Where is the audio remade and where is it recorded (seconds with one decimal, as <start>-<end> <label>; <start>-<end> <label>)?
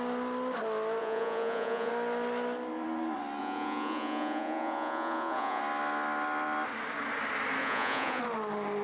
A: 0.0-1.0 recorded; 1.0-1.9 remade; 1.9-3.4 recorded; 3.4-5.6 remade; 5.6-7.6 recorded; 7.6-8.2 remade; 8.2-8.8 recorded